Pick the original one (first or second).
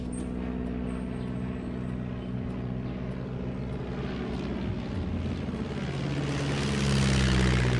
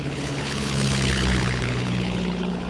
first